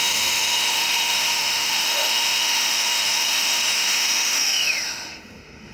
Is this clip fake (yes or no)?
yes